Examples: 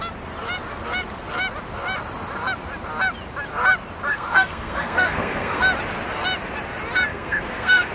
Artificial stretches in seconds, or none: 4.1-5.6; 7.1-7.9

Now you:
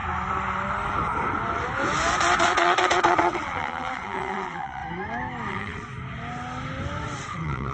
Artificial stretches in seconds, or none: 2.4-4.8; 5.5-5.9; 7.2-7.7

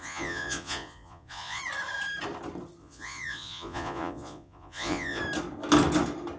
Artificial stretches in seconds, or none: 0.0-1.6; 2.8-5.2

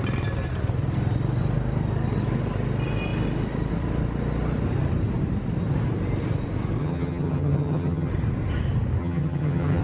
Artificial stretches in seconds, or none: 6.8-8.1; 9.0-9.8